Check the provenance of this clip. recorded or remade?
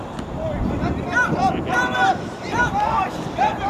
remade